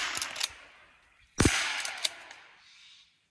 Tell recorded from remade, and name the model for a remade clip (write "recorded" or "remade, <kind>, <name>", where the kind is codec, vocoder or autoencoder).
recorded